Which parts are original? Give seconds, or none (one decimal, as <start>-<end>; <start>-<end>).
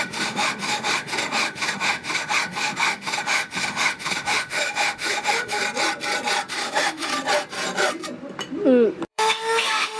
5.6-6.5; 7.1-9.1